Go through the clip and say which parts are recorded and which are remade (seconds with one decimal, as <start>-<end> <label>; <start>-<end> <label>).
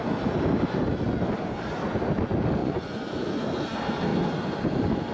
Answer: 0.0-2.6 recorded; 2.6-3.4 remade; 3.4-5.1 recorded